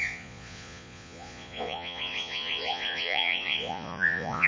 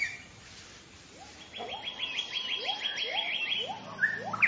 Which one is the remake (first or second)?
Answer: first